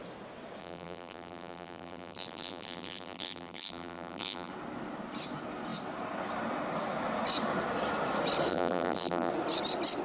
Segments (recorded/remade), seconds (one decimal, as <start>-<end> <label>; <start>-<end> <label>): 0.0-0.6 recorded; 0.6-4.5 remade; 4.5-8.5 recorded; 8.5-9.3 remade; 9.3-10.0 recorded